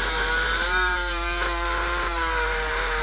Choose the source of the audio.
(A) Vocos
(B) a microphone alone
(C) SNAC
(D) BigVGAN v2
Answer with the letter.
D